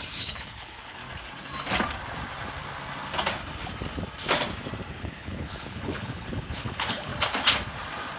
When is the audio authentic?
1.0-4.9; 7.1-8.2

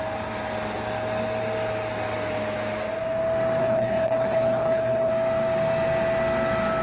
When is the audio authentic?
0.0-3.6; 5.1-6.8

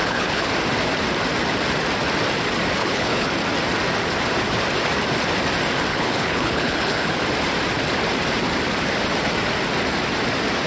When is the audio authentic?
0.5-2.8; 3.3-5.9; 7.2-10.7

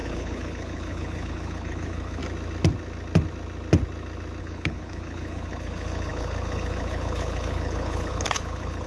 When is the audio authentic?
2.2-4.4

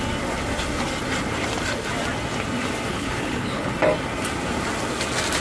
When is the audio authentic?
0.0-2.9; 3.7-5.4

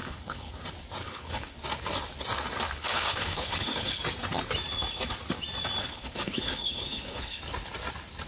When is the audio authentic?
0.5-1.0; 1.6-2.8; 4.0-5.8; 7.4-8.3

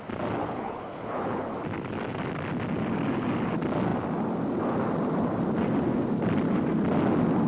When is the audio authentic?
0.0-0.4; 1.5-7.5